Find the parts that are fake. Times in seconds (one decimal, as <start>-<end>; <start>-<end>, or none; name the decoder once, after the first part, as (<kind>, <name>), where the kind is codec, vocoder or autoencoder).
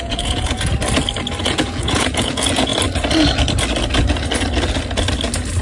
0.0-0.7 (vocoder, Vocos); 1.4-2.7